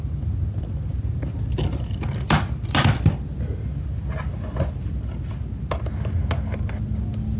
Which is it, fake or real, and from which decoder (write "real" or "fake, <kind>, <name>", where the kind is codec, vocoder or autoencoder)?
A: real